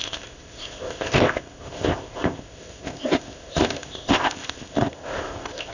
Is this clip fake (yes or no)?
yes